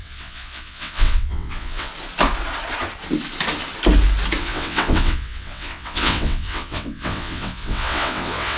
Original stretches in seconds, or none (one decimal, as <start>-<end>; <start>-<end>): 1.9-4.4